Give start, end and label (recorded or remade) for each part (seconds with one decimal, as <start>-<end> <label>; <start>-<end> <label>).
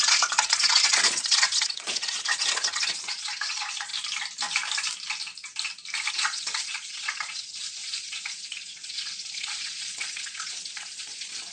0.0-3.9 remade; 3.9-6.1 recorded; 6.1-11.5 remade